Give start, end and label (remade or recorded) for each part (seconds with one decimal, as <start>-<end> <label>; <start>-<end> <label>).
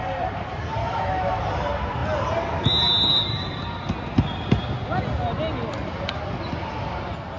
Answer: 0.0-0.8 recorded; 0.8-1.4 remade; 1.4-7.4 recorded